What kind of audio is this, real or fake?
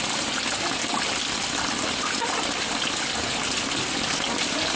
real